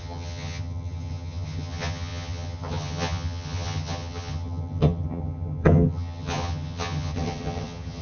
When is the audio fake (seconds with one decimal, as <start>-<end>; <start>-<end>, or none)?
0.0-8.0